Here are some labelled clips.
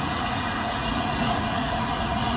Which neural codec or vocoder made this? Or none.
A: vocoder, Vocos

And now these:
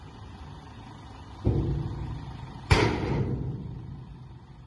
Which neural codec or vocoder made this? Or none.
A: none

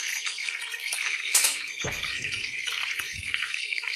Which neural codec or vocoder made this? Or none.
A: codec, SNAC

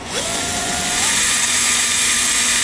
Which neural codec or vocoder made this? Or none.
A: vocoder, Vocos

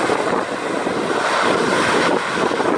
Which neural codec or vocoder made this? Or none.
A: none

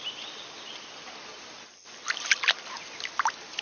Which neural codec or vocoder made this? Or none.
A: none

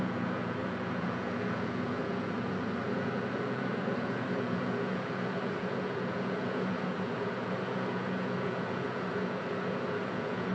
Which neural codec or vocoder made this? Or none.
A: vocoder, Vocos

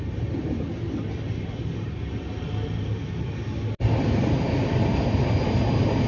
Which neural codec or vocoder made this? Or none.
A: none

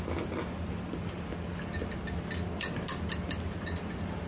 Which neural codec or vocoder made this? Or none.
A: none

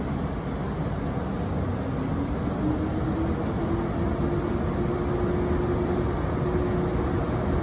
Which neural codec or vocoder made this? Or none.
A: none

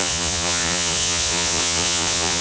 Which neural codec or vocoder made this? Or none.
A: vocoder, Vocos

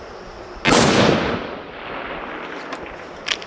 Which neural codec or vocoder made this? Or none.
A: none